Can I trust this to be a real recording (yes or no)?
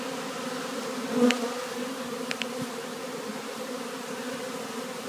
no